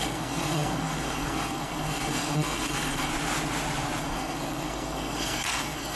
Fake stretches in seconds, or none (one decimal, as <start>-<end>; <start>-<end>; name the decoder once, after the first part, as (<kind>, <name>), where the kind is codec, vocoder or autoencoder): 0.0-3.1 (codec, SNAC); 4.0-6.0